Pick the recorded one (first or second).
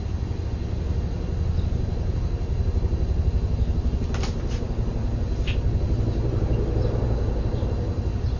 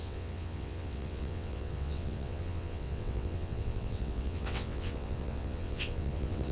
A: first